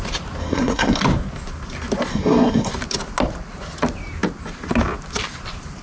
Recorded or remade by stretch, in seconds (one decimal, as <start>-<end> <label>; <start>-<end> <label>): 0.0-0.4 recorded; 0.4-1.0 remade; 1.0-2.1 recorded; 2.1-2.7 remade; 2.7-5.8 recorded